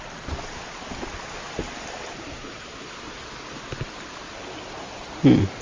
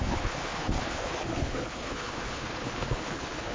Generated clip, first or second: second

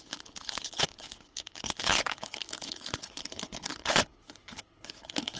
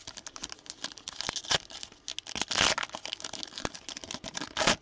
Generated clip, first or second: first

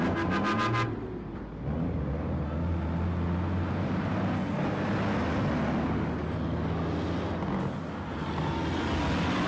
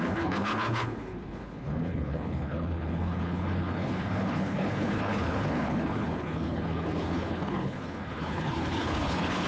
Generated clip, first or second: second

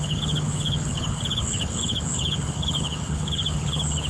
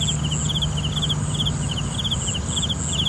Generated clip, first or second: first